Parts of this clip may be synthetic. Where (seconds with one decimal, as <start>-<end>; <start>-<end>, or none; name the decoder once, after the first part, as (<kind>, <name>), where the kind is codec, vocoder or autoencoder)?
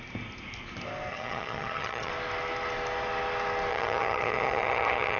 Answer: 1.1-2.1 (vocoder, HiFi-GAN); 3.7-5.2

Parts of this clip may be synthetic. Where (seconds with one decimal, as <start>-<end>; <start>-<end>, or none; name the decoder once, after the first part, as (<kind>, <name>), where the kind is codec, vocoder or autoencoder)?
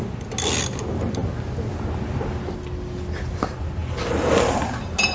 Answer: none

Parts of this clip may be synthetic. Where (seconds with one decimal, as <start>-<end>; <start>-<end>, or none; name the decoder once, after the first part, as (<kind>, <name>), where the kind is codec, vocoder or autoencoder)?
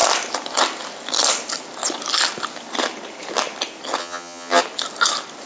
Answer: 4.0-4.6 (vocoder, HiFi-GAN)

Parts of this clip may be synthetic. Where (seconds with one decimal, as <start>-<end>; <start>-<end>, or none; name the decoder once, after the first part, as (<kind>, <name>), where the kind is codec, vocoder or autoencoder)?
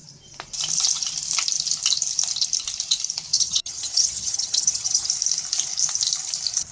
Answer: 3.3-5.1 (vocoder, HiFi-GAN)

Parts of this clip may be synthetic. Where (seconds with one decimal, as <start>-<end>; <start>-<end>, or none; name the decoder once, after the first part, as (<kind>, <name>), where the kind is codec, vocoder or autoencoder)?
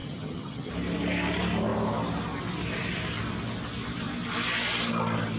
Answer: 0.0-0.7 (vocoder, HiFi-GAN)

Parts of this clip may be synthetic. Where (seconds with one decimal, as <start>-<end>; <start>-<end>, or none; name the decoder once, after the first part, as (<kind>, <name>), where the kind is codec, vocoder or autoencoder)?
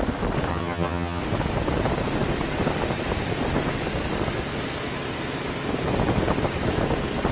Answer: 0.5-1.2 (vocoder, HiFi-GAN)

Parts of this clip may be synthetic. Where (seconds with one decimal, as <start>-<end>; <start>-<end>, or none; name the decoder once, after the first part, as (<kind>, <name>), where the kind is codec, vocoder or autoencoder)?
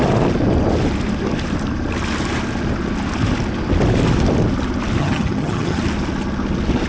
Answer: 5.0-5.8 (vocoder, HiFi-GAN)